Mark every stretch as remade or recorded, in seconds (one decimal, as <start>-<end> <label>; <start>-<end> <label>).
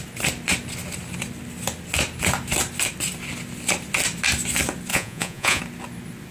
0.0-4.9 recorded; 4.9-5.6 remade; 5.6-6.3 recorded